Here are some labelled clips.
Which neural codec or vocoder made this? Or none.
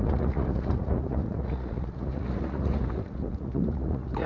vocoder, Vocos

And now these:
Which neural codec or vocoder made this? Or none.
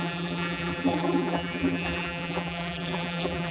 vocoder, BigVGAN v2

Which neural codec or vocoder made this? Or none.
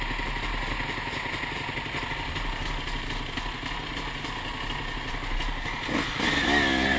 none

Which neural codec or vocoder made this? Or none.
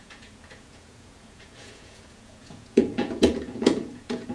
vocoder, Vocos